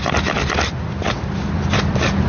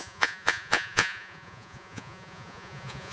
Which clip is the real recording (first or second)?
first